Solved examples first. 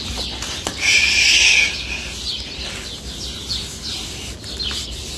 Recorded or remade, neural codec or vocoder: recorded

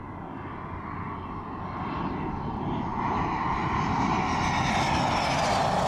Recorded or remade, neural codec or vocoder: recorded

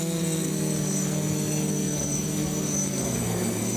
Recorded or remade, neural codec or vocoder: remade, codec, SNAC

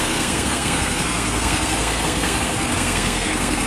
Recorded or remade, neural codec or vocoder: remade, codec, SNAC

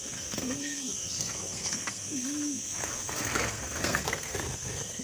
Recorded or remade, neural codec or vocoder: remade, codec, SNAC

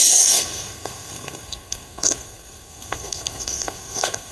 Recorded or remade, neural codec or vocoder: remade, codec, SNAC